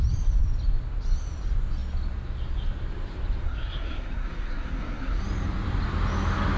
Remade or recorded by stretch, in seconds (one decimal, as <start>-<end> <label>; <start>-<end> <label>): 0.0-3.4 recorded; 3.4-5.2 remade; 5.2-6.6 recorded